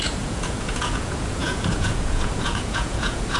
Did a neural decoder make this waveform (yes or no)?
yes